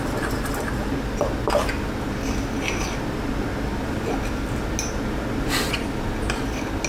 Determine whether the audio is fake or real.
real